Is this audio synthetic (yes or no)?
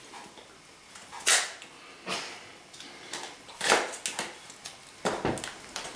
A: no